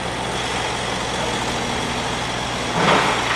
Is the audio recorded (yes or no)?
yes